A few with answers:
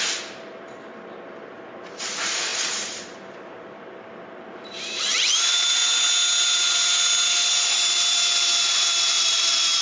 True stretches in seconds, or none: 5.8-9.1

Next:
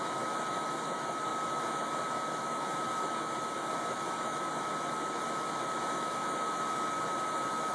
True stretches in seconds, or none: none

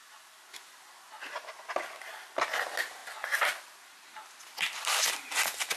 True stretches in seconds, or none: 0.0-5.8